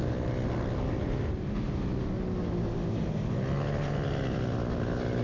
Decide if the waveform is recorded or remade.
recorded